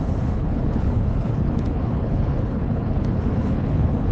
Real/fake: fake